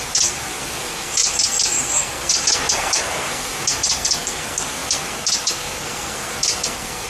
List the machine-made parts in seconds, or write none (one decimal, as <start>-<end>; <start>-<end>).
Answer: 0.0-7.1